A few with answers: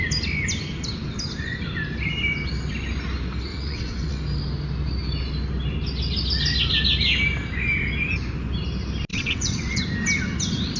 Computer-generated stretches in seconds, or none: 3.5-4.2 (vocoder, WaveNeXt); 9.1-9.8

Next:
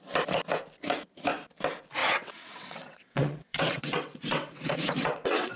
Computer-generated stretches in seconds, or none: 2.0-5.6 (vocoder, WaveNeXt)

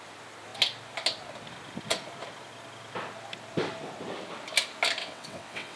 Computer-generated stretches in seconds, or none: 5.0-5.8 (vocoder, WaveNeXt)

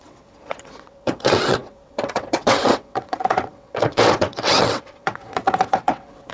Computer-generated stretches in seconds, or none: 0.0-6.3 (vocoder, WaveNeXt)

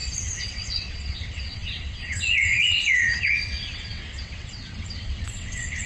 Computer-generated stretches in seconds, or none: 0.0-5.9 (vocoder, WaveNeXt)